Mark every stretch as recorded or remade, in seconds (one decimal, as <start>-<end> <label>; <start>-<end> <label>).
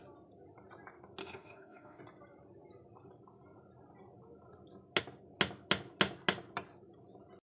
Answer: 0.0-1.2 recorded; 1.2-2.0 remade; 2.0-7.6 recorded